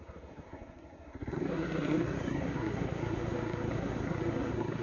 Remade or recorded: remade